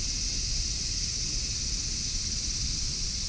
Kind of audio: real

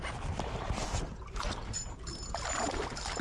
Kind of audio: real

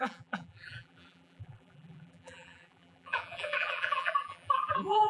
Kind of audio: fake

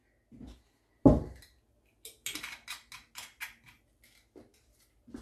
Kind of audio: real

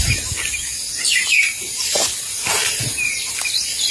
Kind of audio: real